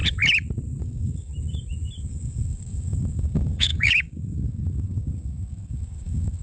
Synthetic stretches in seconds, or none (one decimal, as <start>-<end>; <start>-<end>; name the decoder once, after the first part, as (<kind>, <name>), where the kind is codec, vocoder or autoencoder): 0.8-1.3 (codec, DAC); 2.1-6.4